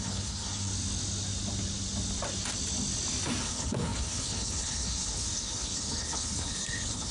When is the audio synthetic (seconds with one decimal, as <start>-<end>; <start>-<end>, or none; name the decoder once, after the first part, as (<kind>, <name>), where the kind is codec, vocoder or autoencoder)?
0.0-0.7 (codec, HILCodec); 3.4-7.1